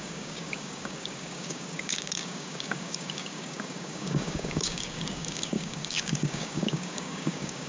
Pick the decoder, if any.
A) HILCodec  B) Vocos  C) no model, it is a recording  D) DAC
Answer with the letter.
D